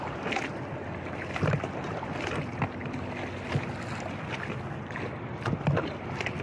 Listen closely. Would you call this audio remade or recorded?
recorded